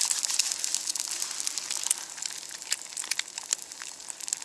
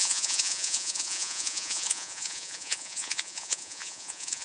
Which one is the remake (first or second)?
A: second